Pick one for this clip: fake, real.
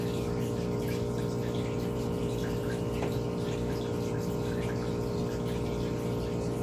real